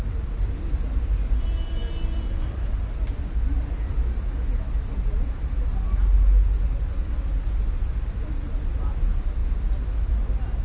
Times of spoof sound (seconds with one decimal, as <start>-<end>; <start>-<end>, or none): none